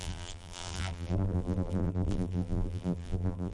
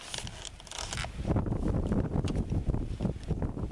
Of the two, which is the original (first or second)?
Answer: second